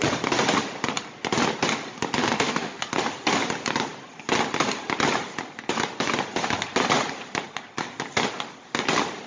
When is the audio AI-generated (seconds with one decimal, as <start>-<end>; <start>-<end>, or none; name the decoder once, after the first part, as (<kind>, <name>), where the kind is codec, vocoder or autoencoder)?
2.2-2.8 (autoencoder, DAC-VAE)